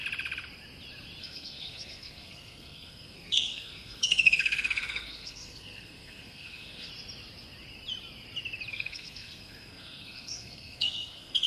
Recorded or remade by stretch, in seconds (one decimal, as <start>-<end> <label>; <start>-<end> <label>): 0.0-1.2 recorded; 1.2-6.9 remade; 6.9-8.7 recorded; 8.7-11.5 remade